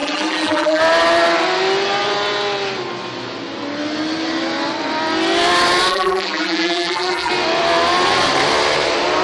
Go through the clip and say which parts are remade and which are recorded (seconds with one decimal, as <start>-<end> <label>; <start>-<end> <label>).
0.0-0.8 remade; 0.8-5.9 recorded; 5.9-7.3 remade; 7.3-9.2 recorded